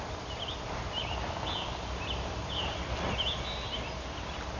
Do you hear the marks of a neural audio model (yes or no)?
no